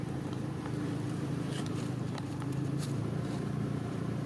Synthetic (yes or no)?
yes